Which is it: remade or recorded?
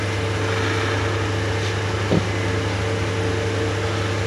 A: recorded